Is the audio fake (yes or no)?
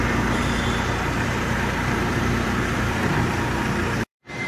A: yes